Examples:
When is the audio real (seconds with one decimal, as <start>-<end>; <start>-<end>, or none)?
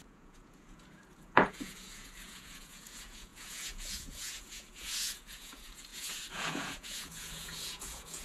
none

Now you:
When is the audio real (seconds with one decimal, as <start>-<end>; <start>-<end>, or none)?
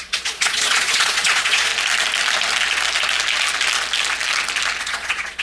1.7-4.8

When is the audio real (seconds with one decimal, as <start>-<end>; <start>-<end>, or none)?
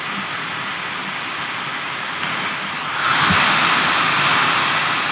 0.0-5.1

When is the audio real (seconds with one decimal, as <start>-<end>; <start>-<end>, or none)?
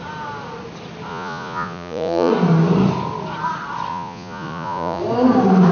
0.0-1.1; 2.3-3.9; 5.0-5.7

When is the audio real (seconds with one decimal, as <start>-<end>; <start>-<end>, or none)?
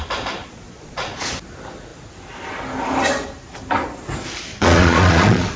0.0-0.4; 1.3-4.5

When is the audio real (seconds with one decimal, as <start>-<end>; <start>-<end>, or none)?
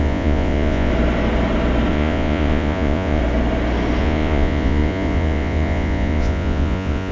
0.9-1.9; 3.2-4.0